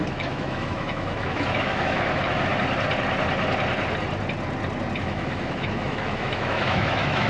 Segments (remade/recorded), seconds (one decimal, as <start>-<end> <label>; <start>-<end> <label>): 0.0-2.5 remade; 2.5-5.0 recorded; 5.0-7.3 remade